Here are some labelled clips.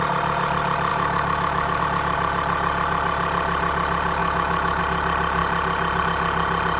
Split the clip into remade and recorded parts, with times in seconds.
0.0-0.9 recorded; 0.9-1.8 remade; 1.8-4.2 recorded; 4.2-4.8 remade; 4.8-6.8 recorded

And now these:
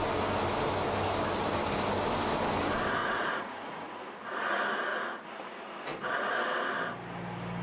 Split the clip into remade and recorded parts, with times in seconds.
0.0-3.0 recorded; 3.0-4.0 remade; 4.0-4.9 recorded; 4.9-5.6 remade; 5.6-7.6 recorded